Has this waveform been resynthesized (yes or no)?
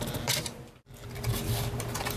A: yes